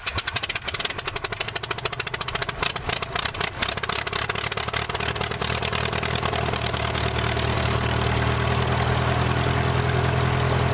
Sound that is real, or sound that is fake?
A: real